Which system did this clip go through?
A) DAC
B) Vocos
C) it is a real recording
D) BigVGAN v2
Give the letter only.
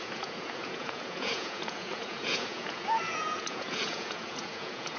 B